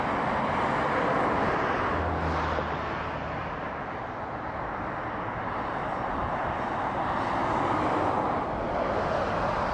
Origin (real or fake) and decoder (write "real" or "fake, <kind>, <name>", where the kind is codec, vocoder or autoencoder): real